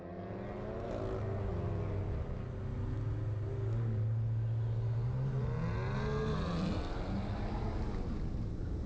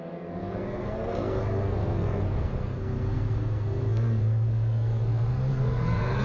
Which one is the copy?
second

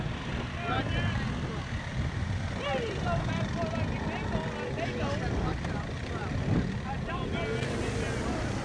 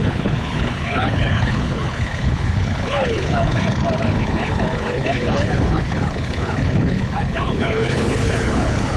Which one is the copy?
second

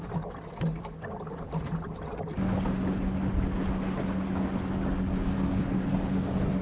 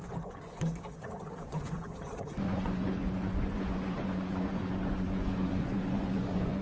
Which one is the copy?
second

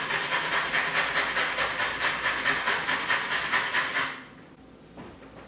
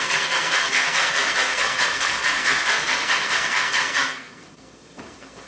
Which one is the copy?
second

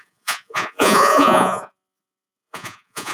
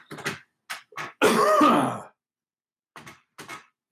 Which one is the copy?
first